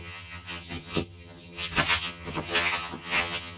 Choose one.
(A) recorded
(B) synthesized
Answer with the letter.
B